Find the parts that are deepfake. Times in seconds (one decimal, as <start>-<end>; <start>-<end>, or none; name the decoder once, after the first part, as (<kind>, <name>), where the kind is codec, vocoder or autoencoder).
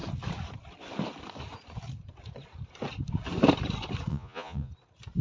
4.1-4.7 (vocoder, Vocos)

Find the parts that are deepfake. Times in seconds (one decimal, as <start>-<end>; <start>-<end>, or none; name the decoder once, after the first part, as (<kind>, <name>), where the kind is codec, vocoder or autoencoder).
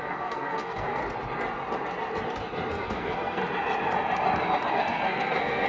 0.0-1.0 (codec, SNAC); 2.7-3.4; 4.7-5.7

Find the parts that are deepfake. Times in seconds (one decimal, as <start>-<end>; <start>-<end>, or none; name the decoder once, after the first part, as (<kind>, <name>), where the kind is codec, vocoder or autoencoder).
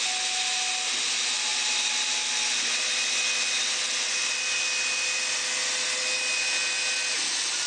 none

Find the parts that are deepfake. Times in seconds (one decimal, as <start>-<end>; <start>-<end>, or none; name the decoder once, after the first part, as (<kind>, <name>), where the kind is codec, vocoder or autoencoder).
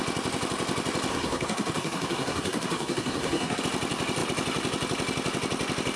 1.1-3.6 (codec, SNAC)